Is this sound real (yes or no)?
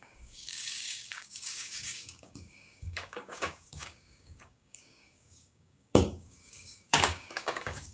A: no